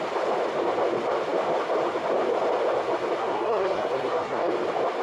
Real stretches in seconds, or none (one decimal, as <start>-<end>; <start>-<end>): 0.0-3.2; 4.5-5.0